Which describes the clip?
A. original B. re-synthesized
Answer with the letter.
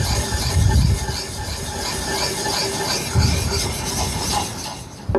A